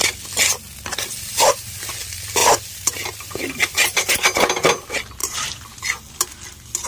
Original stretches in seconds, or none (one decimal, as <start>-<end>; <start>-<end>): 0.0-1.3; 1.9-2.4; 4.1-5.2; 5.8-6.9

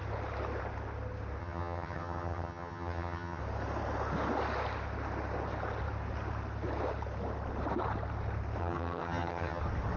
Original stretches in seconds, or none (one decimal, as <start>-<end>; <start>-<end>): 0.0-1.4; 3.4-8.6; 9.6-10.0

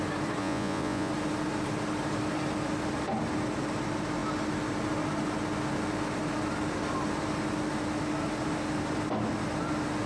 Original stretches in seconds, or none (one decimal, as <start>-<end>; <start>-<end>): 0.0-0.4; 1.1-10.1

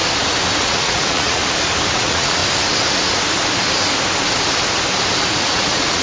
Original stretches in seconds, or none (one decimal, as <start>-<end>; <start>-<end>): 0.0-0.6; 1.4-1.9; 2.4-5.4

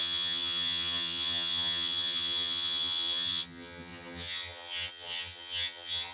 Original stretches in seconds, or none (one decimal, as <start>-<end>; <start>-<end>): none

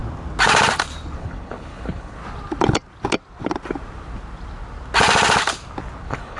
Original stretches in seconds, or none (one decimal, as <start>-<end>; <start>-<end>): 0.0-1.2; 2.2-6.0

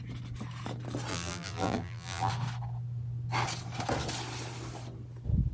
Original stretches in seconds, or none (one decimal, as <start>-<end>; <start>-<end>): 0.0-1.1; 2.3-5.5